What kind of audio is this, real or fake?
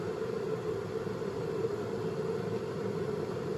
fake